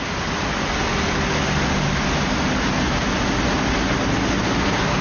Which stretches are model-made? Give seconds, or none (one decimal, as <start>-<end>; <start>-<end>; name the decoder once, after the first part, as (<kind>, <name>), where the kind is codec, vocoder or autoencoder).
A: none